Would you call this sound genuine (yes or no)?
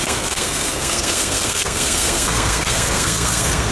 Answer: no